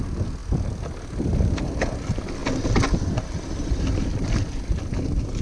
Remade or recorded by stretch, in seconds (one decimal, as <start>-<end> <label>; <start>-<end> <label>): 0.0-5.4 recorded